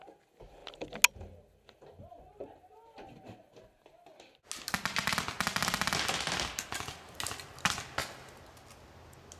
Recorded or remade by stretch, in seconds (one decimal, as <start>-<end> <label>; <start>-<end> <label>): 0.0-9.4 recorded